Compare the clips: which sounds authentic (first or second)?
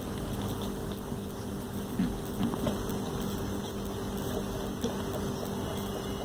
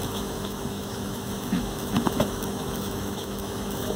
first